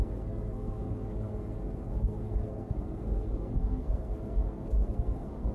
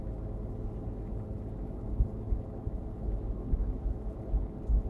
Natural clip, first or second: second